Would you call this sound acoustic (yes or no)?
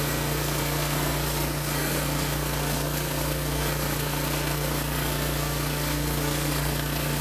no